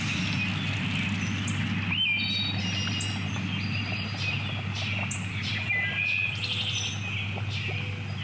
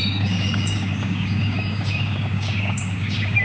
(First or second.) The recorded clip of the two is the first